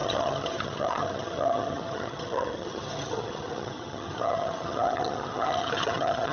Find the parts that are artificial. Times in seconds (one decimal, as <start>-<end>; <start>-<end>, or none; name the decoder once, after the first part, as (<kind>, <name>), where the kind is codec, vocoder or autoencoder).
0.0-6.3 (vocoder, HiFi-GAN)